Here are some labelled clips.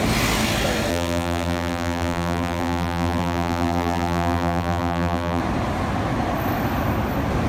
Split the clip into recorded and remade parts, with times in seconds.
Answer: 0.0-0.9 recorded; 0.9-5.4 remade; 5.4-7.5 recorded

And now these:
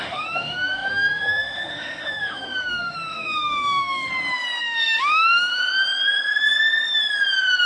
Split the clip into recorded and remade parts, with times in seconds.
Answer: 0.0-4.1 remade; 4.1-4.6 recorded; 4.6-5.6 remade; 5.6-7.7 recorded

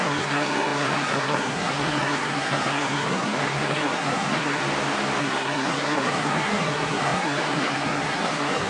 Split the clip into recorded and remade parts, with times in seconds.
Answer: 0.0-4.6 remade; 4.6-5.2 recorded; 5.2-8.7 remade

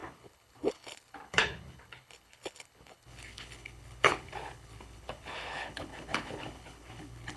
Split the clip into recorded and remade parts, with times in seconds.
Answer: 0.0-7.4 remade

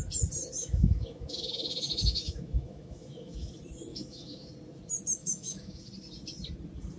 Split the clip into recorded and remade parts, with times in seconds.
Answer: 0.0-0.6 recorded; 0.6-3.5 remade; 3.5-3.9 recorded; 3.9-4.5 remade; 4.5-5.2 recorded; 5.2-5.8 remade; 5.8-7.0 recorded

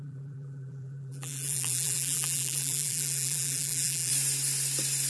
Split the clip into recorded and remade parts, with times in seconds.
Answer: 0.0-4.1 remade; 4.1-5.1 recorded

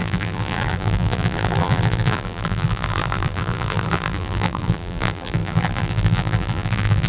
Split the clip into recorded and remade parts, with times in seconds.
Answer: 0.0-7.1 remade

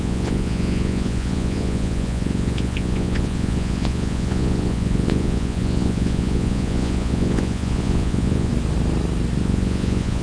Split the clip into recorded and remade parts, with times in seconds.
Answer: 0.0-8.5 remade; 8.5-9.4 recorded; 9.4-10.2 remade